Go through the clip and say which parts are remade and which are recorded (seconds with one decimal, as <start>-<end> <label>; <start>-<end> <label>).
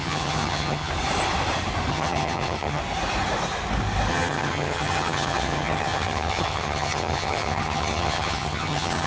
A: 0.0-0.9 remade; 0.9-1.9 recorded; 1.9-2.8 remade; 2.8-4.1 recorded; 4.1-9.1 remade